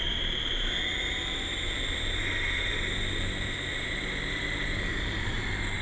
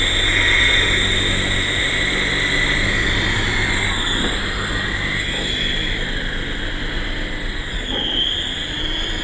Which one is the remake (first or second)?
first